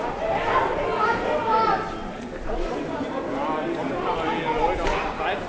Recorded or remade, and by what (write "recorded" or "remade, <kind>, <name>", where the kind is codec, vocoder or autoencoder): recorded